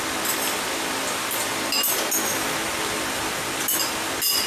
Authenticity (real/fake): real